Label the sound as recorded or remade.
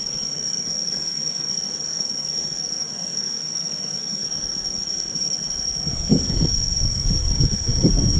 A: remade